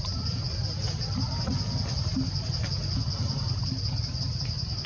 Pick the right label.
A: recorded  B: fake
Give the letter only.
A